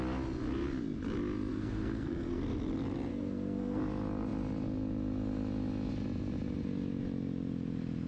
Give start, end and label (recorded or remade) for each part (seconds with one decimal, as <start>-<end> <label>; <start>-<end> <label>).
0.0-1.5 recorded; 1.5-2.4 remade; 2.4-3.1 recorded; 3.1-3.8 remade; 3.8-8.1 recorded